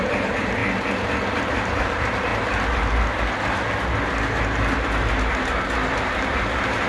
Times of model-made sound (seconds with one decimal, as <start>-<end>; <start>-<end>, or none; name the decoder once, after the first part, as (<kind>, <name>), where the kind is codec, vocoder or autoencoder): 0.0-0.6 (vocoder, BigVGAN v2); 1.5-2.3; 5.9-6.9

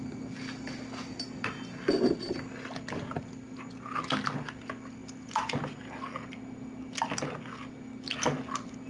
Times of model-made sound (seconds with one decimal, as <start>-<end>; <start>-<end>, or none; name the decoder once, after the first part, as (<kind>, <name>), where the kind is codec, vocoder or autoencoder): none

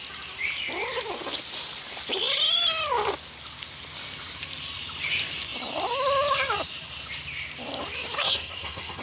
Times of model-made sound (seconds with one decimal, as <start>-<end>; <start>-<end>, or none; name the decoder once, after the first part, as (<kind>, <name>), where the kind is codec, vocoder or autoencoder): 8.2-9.0 (codec, SNAC)

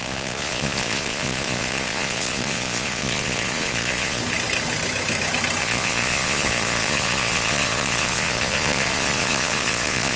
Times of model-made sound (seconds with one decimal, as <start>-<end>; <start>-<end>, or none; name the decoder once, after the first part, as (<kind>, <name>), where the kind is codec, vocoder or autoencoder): 0.0-4.2 (vocoder, Vocos); 5.6-10.2